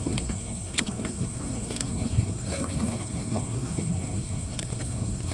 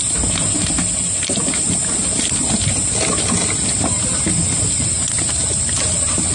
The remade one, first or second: first